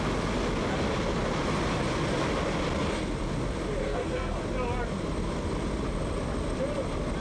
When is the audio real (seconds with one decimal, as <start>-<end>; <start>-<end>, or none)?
0.0-3.8; 4.4-7.2